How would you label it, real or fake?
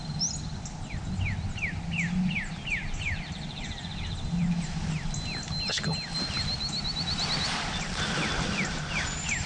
real